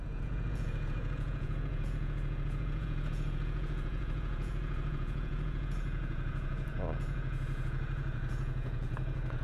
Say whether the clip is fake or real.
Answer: fake